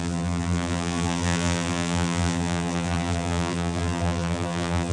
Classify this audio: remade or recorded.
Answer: remade